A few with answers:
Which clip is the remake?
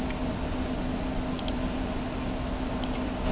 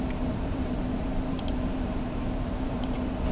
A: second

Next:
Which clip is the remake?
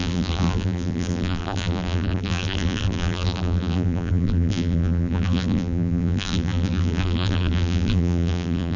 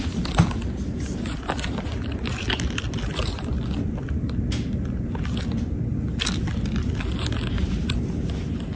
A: first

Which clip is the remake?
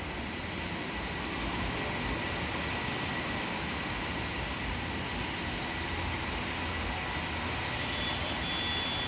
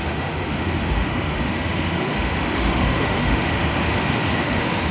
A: second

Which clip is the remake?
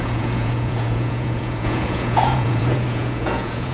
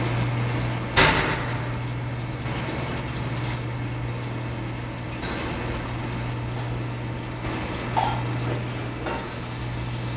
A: first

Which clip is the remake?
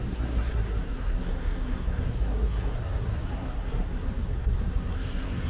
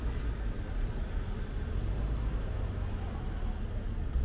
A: first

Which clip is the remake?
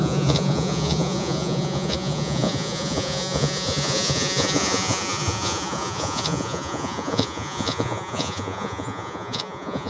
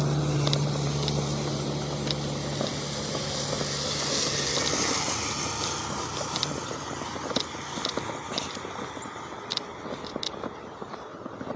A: first